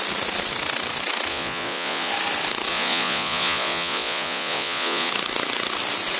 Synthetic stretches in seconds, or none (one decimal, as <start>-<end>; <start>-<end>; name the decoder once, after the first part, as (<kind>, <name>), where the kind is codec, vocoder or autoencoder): 1.3-2.1 (vocoder, Vocos); 2.7-5.1